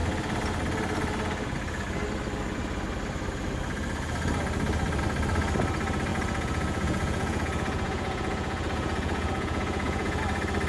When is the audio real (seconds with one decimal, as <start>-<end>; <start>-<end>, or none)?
0.0-6.1; 10.2-10.7